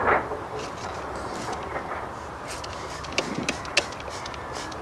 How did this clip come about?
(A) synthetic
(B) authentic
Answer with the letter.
B